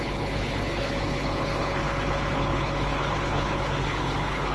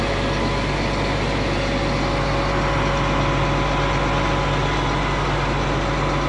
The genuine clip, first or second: second